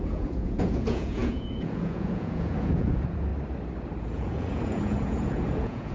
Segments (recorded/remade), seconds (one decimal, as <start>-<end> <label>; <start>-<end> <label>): 0.0-3.3 remade; 3.3-4.0 recorded; 4.0-5.9 remade